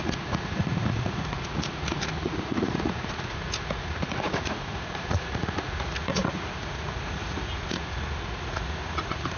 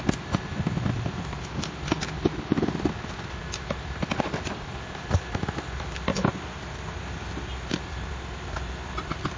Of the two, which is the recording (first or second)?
second